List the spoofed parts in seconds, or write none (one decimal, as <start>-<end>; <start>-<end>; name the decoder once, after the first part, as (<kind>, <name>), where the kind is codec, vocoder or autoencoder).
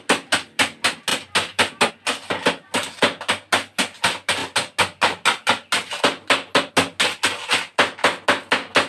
none